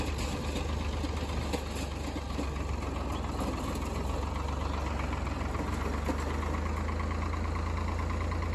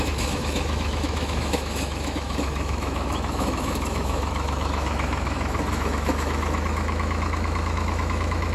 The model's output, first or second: second